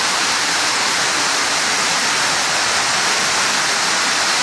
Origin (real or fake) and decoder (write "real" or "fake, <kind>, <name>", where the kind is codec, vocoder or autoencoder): real